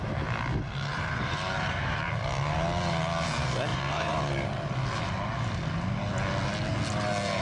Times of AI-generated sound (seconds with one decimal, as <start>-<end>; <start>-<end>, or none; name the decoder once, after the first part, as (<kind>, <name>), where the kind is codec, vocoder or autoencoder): 0.9-2.1 (vocoder, BigVGAN v2); 3.7-4.2